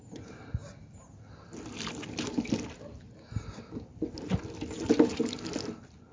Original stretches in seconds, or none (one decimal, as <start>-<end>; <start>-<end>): 0.0-6.1